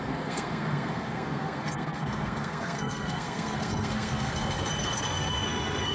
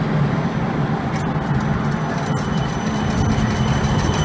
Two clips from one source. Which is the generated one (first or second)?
first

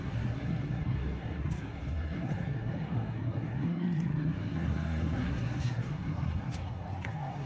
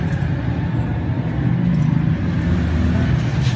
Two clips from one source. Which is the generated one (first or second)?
first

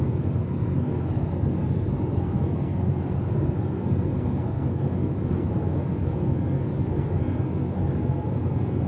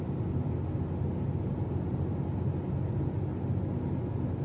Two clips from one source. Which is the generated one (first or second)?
first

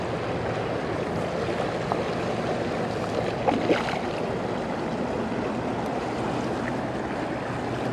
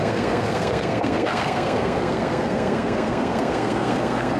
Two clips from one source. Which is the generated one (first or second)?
second